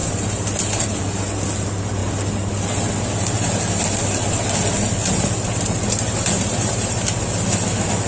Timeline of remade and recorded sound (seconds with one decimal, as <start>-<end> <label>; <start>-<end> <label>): 0.0-1.0 remade; 1.0-5.0 recorded; 5.0-7.2 remade; 7.2-8.1 recorded